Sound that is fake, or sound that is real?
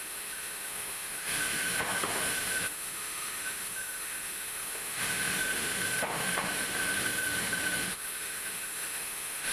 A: fake